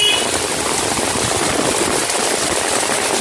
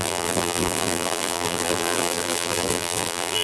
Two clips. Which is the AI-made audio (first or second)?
second